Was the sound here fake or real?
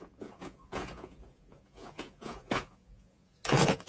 fake